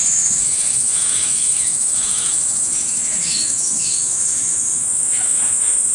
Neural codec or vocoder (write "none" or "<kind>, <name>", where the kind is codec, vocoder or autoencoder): autoencoder, DAC-VAE